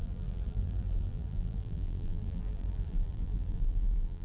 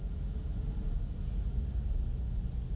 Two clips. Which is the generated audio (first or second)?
first